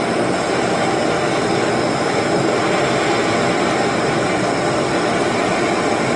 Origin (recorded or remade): recorded